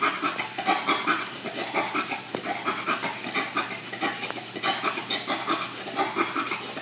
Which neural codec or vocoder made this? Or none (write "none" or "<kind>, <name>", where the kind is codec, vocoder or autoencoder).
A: none